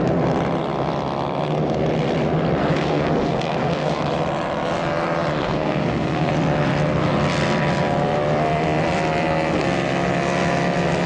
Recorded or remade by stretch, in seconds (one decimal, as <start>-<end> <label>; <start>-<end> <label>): 0.0-2.6 recorded; 2.6-4.0 remade; 4.0-5.4 recorded; 5.4-6.3 remade; 6.3-11.1 recorded